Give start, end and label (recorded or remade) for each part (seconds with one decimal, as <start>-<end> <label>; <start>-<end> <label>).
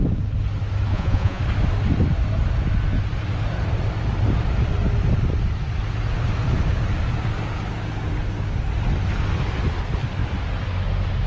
0.0-0.9 recorded; 0.9-1.4 remade; 1.4-11.3 recorded